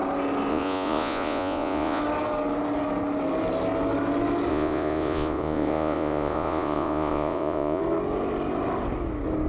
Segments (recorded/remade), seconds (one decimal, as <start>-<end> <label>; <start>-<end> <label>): 0.0-0.5 recorded; 0.5-2.0 remade; 2.0-4.5 recorded; 4.5-7.8 remade; 7.8-9.5 recorded